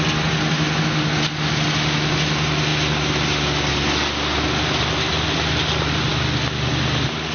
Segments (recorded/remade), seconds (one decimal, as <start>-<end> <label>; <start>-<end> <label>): 0.0-7.3 recorded